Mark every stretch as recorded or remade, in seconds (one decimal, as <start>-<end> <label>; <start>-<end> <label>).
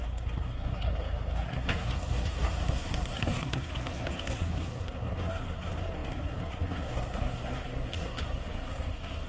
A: 0.0-9.3 remade